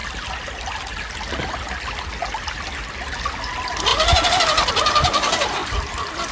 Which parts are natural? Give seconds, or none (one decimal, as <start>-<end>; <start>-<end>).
0.0-6.3